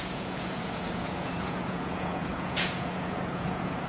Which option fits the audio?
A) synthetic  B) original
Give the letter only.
A